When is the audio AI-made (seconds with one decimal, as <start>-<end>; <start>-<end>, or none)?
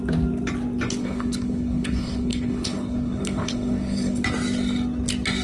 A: 1.0-4.2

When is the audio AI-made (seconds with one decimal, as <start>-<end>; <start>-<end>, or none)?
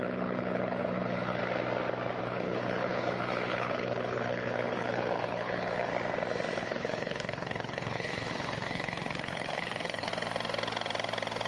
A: 0.0-1.4; 2.2-5.9; 6.6-10.1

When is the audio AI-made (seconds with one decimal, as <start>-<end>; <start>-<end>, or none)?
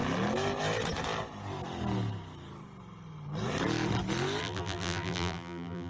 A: 4.4-5.9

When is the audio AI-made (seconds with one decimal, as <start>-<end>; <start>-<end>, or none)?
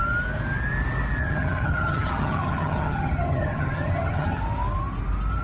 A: 1.2-4.4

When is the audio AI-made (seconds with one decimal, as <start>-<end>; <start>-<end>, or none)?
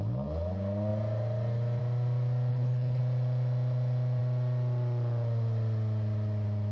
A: 2.5-3.0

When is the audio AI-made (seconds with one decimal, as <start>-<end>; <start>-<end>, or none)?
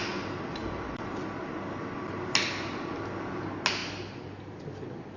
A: none